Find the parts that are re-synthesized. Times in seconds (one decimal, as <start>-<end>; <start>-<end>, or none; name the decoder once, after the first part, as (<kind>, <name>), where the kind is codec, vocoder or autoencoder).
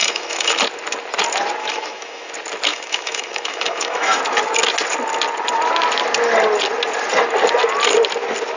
0.0-0.6 (autoencoder, DAC-VAE); 1.6-2.3; 2.7-4.2